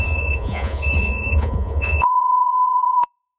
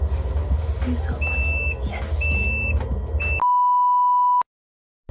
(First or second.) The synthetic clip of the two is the first